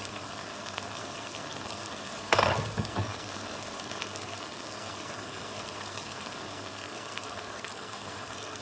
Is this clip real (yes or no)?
no